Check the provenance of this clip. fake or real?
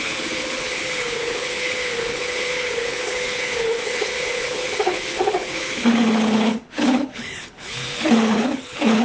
fake